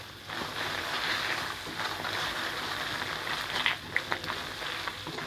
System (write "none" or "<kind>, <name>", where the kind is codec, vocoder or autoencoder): none